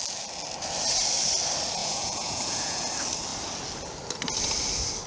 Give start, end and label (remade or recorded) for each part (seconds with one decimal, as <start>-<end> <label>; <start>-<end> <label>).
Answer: 0.0-1.8 recorded; 1.8-2.9 remade; 2.9-5.1 recorded